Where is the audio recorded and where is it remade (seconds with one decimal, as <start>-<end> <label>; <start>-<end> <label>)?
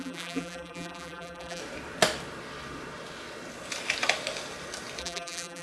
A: 0.0-1.6 remade; 1.6-5.0 recorded; 5.0-5.6 remade